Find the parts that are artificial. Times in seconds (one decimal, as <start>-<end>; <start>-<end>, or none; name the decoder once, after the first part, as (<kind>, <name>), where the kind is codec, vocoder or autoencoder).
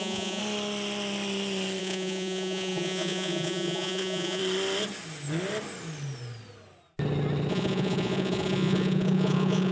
0.0-0.4 (vocoder, Vocos); 1.8-4.4; 7.5-9.7